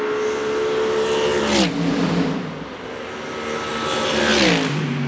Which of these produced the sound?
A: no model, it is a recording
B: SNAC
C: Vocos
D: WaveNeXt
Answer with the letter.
A